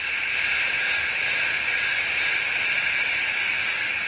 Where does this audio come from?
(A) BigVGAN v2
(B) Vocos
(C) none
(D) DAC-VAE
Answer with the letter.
C